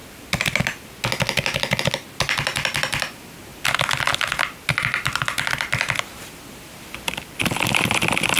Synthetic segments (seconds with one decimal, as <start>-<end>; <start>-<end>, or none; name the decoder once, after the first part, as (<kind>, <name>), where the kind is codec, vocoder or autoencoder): 0.0-0.6 (vocoder, BigVGAN v2)